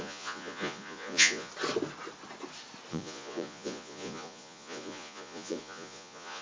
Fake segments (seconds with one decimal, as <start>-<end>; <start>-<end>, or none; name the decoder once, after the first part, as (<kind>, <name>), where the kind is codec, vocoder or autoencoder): 0.0-1.5 (vocoder, Vocos); 2.9-6.4